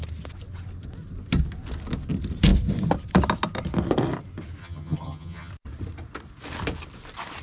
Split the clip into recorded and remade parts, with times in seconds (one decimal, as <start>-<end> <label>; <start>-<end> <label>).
0.0-4.6 recorded; 4.6-5.5 remade; 5.5-7.4 recorded